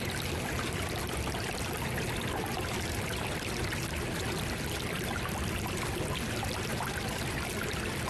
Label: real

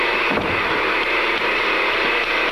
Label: fake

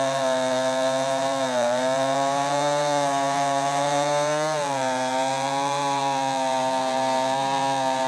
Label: fake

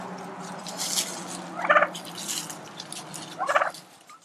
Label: real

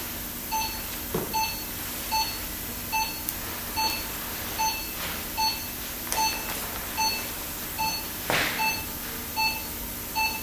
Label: real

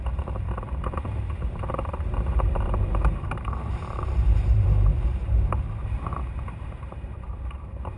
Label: fake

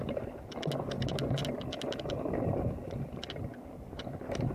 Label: real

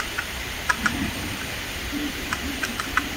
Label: fake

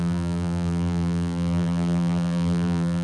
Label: fake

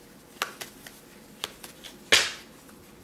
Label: real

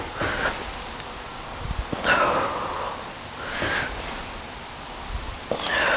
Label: real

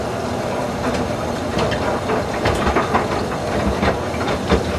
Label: fake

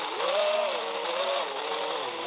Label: fake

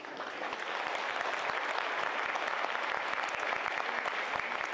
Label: real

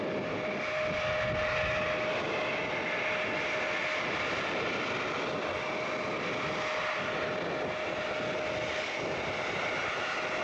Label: real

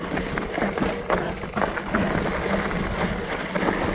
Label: real